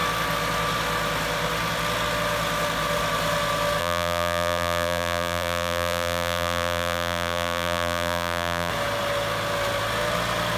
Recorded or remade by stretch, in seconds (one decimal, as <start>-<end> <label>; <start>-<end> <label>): 0.0-3.8 recorded; 3.8-8.7 remade; 8.7-10.6 recorded